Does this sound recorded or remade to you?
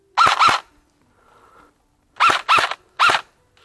recorded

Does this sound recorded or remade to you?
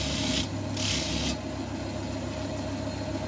recorded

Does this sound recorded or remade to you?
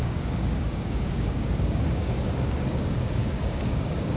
remade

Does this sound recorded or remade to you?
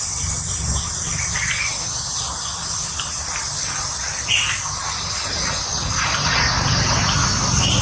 recorded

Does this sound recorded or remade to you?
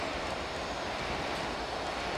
recorded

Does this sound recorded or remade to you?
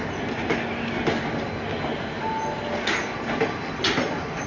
recorded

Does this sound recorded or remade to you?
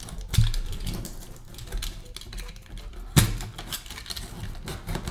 recorded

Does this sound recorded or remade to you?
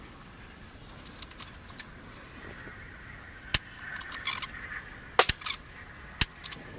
recorded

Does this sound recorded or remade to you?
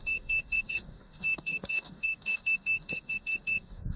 remade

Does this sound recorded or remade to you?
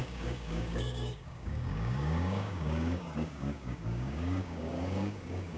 remade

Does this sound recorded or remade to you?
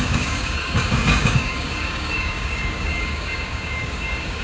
remade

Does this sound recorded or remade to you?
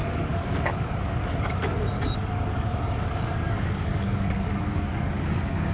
remade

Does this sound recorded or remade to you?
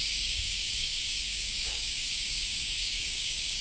remade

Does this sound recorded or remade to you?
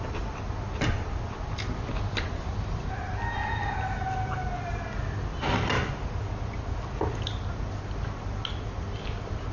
recorded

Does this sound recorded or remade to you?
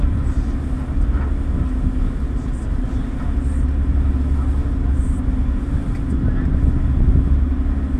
recorded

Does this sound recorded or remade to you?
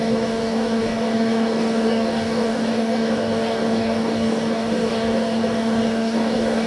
remade